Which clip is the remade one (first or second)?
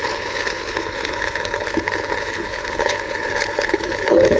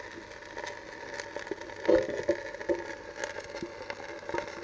first